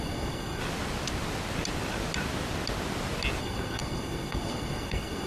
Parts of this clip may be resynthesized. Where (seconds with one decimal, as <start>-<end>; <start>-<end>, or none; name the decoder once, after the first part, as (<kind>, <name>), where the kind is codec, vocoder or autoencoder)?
0.0-0.6 (codec, SNAC); 3.4-5.3